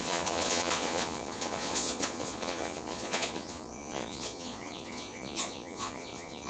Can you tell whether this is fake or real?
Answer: fake